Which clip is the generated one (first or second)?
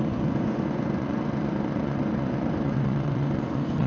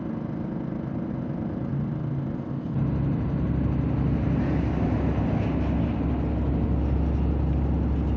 first